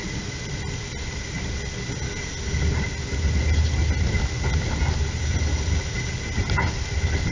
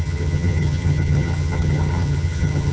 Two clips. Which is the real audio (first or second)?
first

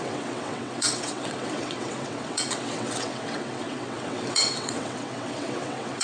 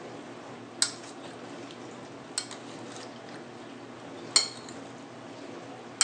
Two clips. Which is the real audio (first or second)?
second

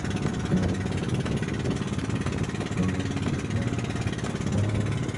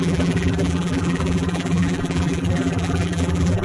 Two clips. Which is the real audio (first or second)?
first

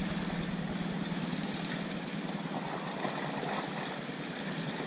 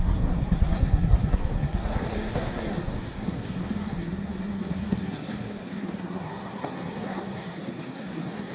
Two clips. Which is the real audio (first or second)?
first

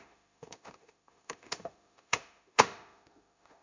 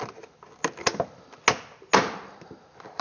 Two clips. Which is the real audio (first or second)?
second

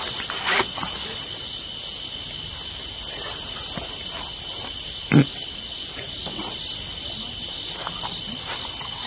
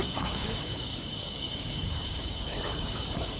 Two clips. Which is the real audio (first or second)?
first